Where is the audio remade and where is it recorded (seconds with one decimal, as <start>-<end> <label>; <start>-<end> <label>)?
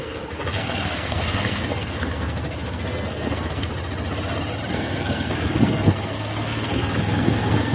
0.0-3.7 remade; 3.7-4.7 recorded; 4.7-7.7 remade